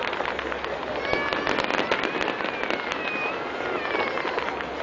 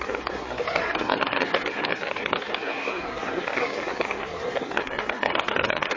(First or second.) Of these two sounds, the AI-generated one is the second